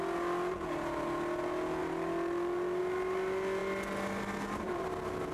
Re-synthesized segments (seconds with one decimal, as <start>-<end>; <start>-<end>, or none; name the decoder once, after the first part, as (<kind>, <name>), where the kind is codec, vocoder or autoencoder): none